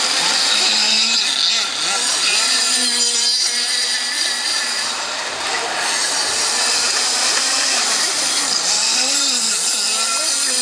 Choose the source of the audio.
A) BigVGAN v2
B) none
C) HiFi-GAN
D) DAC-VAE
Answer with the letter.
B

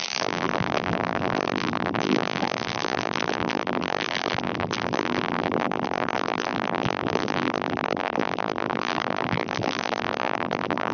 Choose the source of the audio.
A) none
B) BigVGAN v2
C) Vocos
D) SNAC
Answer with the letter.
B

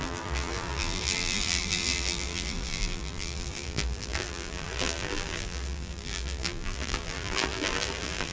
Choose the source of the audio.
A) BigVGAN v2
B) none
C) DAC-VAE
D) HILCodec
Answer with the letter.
A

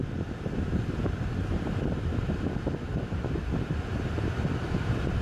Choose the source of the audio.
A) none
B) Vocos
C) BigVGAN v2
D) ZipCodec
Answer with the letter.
C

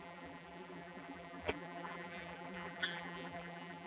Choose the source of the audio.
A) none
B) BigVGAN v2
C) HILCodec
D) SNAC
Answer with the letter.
B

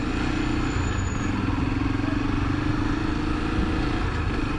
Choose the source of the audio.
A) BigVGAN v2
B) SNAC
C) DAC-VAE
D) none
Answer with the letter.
D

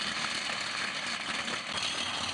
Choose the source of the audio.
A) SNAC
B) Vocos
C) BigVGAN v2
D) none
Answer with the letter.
D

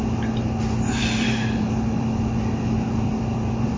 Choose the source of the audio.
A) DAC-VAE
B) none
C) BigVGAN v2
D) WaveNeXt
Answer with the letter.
C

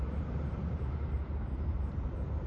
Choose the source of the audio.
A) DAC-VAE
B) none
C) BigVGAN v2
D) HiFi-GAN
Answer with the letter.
C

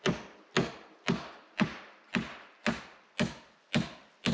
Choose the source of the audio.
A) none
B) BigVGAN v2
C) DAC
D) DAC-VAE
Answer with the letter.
A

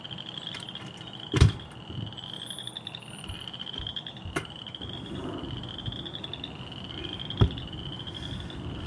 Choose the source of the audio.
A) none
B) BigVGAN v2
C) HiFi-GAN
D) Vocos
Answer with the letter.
A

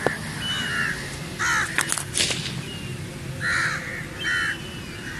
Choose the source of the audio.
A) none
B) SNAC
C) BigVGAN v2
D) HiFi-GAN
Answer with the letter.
A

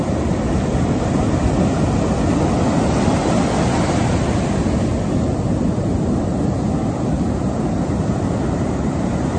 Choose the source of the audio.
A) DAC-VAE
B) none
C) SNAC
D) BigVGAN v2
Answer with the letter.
B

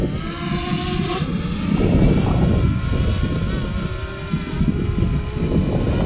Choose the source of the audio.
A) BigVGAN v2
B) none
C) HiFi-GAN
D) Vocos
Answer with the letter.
B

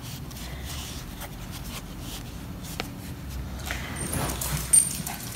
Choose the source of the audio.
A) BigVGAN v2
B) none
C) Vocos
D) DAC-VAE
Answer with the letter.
B